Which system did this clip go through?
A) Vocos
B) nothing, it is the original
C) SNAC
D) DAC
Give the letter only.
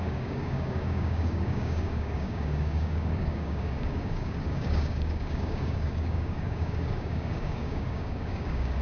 D